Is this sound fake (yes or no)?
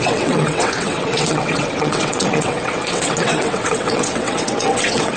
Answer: yes